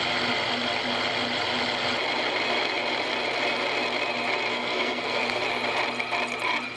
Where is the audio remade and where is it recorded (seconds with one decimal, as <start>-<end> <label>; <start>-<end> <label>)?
0.0-4.5 recorded; 4.5-5.4 remade; 5.4-6.8 recorded